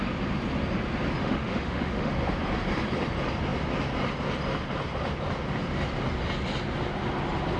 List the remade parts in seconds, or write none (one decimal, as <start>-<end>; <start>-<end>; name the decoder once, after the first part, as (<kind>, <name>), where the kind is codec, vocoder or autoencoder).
1.2-2.1 (autoencoder, DAC-VAE)